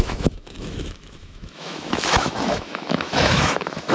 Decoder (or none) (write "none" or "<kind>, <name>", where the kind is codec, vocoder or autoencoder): autoencoder, DAC-VAE